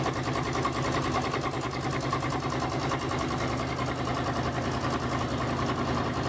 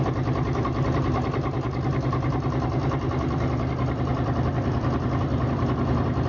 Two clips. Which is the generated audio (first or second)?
second